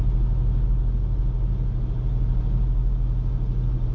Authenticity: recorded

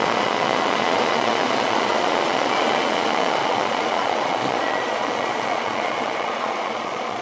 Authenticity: remade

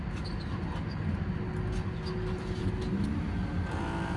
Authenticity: recorded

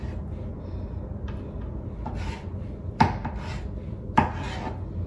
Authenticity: recorded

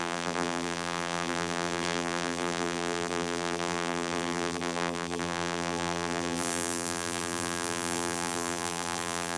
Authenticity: remade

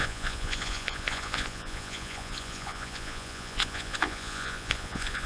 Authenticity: remade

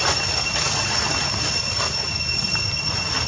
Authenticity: recorded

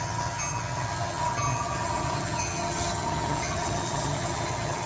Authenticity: remade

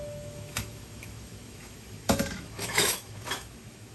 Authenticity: remade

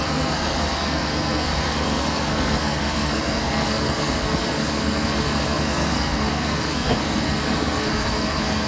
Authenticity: remade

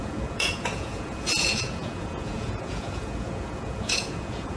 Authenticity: remade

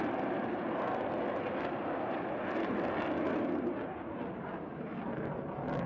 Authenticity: recorded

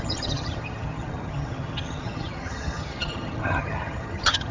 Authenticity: remade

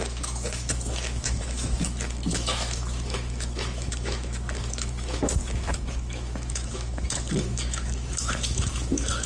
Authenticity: remade